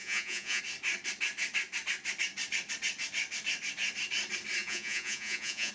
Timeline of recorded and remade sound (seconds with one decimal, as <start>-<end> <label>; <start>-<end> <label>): 0.0-0.6 remade; 0.6-4.6 recorded; 4.6-5.7 remade